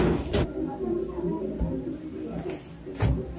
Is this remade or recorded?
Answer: recorded